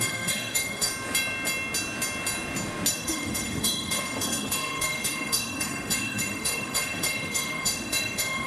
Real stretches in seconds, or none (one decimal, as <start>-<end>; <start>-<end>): 0.9-2.9